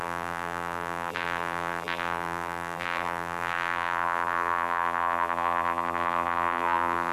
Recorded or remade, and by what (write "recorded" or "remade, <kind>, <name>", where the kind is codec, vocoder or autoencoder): remade, vocoder, BigVGAN v2